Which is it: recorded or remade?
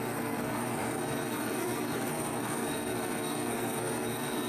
remade